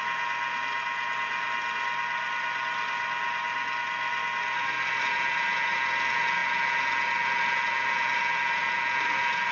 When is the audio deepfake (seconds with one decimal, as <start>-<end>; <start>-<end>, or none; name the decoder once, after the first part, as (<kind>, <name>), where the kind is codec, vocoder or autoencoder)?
none